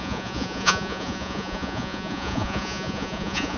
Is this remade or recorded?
remade